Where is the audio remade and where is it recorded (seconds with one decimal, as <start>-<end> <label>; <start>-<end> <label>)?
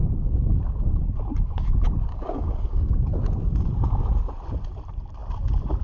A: 0.0-2.1 recorded; 2.1-3.0 remade; 3.0-5.8 recorded